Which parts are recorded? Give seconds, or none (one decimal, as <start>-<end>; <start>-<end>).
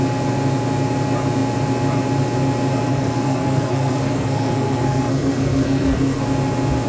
0.0-2.9; 6.2-6.9